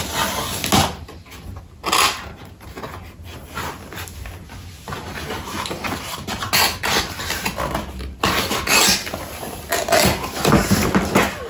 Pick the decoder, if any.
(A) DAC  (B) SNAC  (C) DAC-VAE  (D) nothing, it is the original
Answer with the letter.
D